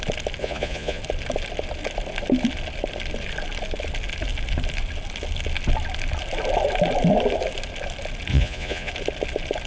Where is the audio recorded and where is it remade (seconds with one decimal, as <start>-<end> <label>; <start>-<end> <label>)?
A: 0.0-0.4 recorded; 0.4-1.0 remade; 1.0-8.3 recorded; 8.3-8.9 remade; 8.9-9.7 recorded